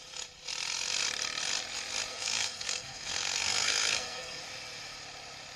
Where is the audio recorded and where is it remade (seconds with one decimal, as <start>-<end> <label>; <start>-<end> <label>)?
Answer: 0.0-2.1 recorded; 2.1-4.4 remade; 4.4-5.6 recorded